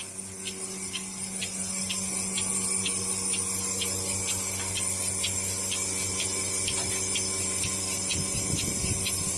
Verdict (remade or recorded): recorded